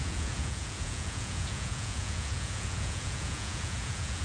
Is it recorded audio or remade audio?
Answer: remade